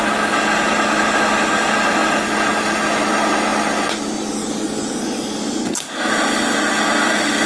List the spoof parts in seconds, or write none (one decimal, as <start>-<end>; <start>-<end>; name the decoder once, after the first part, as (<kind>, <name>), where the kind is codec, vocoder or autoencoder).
5.6-6.1 (codec, SNAC)